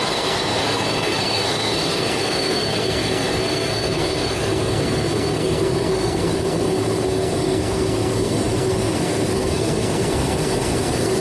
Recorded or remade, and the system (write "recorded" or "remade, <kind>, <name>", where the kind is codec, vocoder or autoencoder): remade, codec, SNAC